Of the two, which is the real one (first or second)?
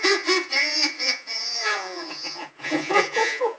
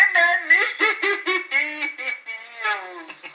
second